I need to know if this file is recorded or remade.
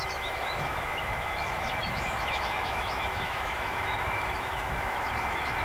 remade